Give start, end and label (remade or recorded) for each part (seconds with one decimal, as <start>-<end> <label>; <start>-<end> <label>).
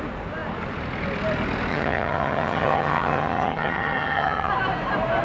0.0-1.7 recorded; 1.7-4.5 remade; 4.5-5.2 recorded